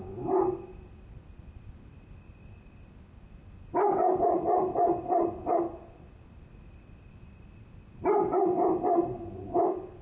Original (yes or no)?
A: yes